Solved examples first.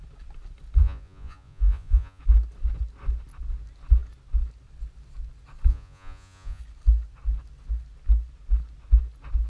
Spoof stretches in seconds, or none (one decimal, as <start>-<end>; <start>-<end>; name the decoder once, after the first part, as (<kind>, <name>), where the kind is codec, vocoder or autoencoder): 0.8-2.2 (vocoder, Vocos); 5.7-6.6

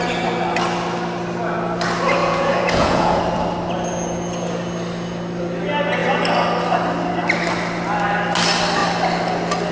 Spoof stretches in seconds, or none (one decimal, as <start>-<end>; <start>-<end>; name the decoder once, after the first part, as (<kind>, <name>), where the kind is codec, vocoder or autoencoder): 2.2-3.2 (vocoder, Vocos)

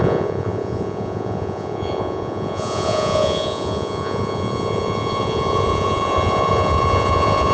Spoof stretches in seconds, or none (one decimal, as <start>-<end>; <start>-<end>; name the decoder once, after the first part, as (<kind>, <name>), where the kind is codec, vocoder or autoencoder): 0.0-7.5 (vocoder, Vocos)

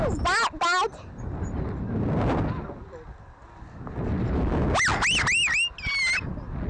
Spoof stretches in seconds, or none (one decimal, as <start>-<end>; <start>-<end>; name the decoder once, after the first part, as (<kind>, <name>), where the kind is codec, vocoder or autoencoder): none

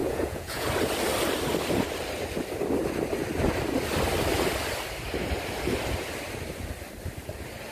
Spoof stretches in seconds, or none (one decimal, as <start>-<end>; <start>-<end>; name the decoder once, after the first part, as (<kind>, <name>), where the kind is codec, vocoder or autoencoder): 0.0-0.7 (vocoder, Vocos)

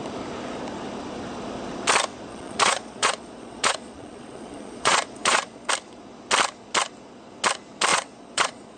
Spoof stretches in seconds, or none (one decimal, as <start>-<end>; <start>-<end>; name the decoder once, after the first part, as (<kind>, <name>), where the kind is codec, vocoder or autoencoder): 2.3-5.7 (vocoder, Vocos); 7.9-8.8